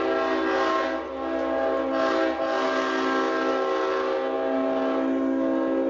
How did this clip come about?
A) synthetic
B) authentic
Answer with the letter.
B